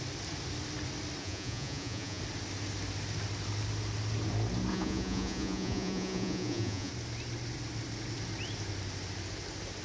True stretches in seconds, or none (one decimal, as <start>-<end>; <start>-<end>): 0.0-1.2; 2.2-4.7; 6.9-9.8